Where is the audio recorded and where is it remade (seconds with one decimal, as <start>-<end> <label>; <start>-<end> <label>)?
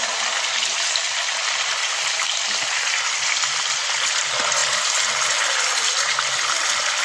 0.0-7.0 recorded